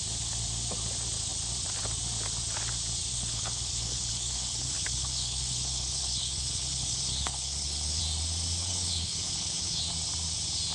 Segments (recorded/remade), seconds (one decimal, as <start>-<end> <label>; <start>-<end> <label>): 0.0-3.1 recorded; 3.1-8.0 remade; 8.0-8.6 recorded; 8.6-9.8 remade; 9.8-10.7 recorded